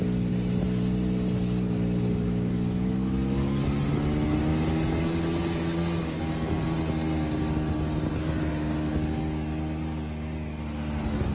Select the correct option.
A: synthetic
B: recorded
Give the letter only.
B